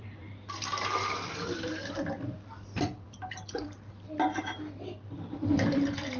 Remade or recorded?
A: remade